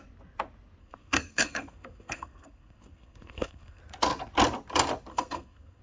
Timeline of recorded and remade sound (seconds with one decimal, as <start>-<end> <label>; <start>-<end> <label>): 0.0-0.8 recorded; 0.8-3.8 remade; 3.8-5.1 recorded; 5.1-5.8 remade